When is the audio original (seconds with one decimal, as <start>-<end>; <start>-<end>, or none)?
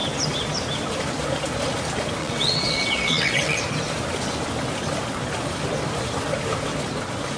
0.0-2.2; 3.6-7.4